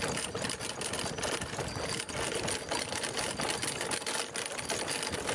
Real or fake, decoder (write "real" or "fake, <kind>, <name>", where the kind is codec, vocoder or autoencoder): real